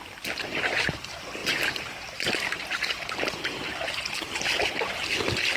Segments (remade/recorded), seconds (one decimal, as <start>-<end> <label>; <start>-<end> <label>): 0.0-5.6 recorded